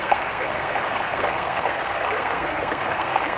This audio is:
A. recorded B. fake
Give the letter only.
B